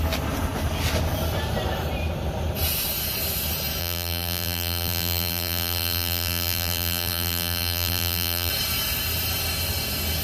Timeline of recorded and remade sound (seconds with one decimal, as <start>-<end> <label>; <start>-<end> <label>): 0.0-3.8 recorded; 3.8-8.5 remade; 8.5-10.2 recorded